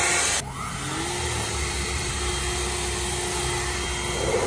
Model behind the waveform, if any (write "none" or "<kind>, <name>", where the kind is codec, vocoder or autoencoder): none